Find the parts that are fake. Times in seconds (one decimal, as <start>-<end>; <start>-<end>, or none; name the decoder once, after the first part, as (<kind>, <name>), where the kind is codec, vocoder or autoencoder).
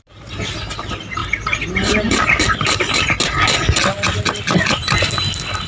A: none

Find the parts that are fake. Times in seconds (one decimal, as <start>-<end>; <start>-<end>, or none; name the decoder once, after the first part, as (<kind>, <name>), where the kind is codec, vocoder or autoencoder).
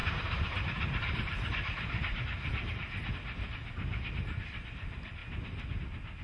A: 0.0-3.6 (vocoder, BigVGAN v2); 4.1-5.2; 5.8-6.2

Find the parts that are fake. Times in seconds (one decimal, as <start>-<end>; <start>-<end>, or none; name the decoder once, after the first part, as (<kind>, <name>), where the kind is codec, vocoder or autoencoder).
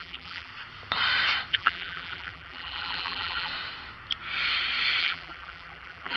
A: 0.0-0.5 (vocoder, BigVGAN v2); 1.5-3.5; 5.0-6.2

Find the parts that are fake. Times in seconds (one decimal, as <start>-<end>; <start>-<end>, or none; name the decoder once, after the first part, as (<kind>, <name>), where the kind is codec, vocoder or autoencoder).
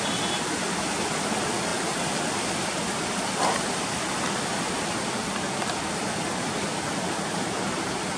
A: none